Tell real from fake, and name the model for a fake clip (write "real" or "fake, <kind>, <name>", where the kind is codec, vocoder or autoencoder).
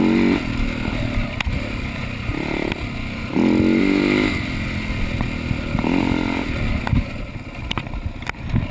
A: real